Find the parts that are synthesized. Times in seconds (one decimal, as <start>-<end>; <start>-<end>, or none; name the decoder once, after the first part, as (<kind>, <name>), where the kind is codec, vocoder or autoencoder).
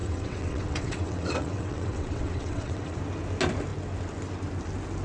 0.0-3.0 (vocoder, WaveNeXt)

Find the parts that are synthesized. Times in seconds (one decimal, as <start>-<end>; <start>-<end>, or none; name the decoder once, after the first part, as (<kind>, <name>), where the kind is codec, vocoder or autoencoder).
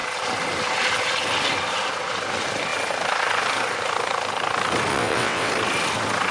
4.9-5.5 (vocoder, WaveNeXt)